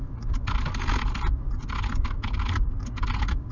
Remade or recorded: remade